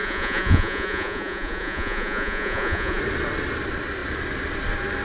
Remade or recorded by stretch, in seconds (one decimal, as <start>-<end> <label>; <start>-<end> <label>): 0.0-3.0 remade; 3.0-5.0 recorded